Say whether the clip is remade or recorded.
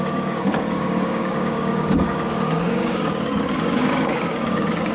remade